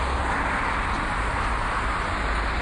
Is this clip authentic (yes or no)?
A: yes